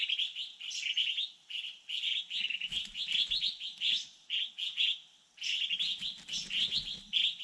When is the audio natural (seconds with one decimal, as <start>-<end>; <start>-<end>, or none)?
0.0-7.4